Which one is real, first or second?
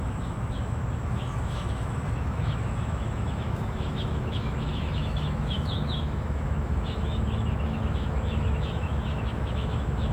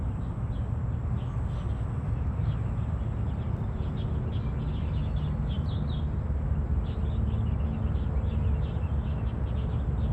second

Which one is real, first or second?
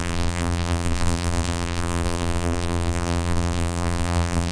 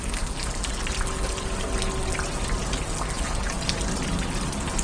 second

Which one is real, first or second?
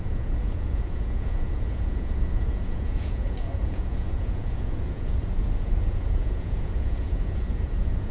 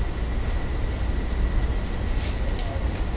second